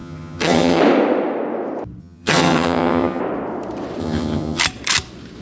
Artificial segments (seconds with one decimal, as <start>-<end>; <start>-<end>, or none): 0.0-0.8; 2.0-3.2; 4.0-4.6